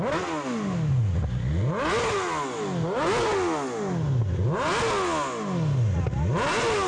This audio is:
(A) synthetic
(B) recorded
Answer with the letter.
B